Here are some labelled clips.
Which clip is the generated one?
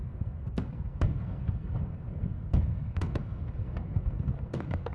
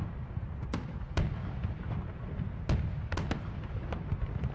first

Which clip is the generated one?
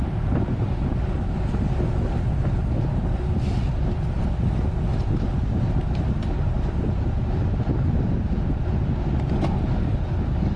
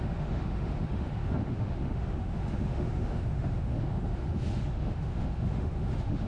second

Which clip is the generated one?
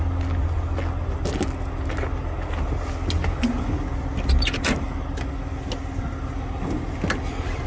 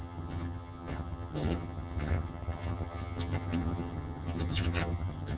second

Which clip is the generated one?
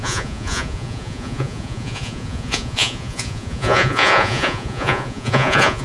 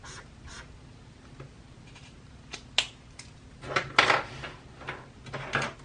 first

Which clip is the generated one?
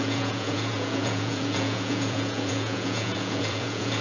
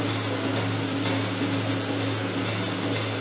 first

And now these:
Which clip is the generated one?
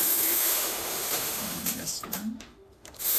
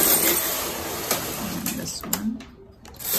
first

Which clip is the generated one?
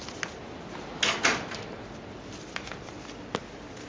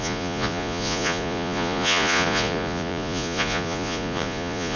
second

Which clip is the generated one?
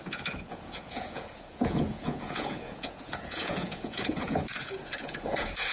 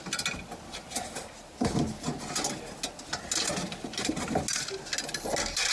first